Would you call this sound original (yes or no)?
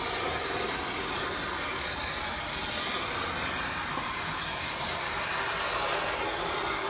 yes